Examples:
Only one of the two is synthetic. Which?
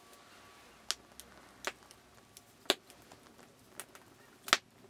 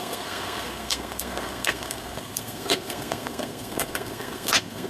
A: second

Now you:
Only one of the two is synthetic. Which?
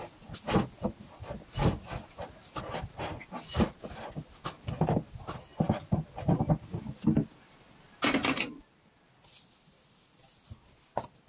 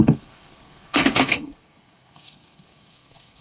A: second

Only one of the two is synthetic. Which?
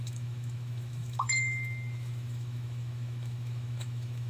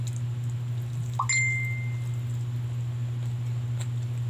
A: first